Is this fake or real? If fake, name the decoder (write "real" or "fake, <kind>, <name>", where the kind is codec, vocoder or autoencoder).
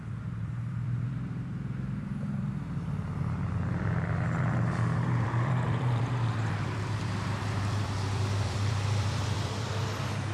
fake, vocoder, BigVGAN v2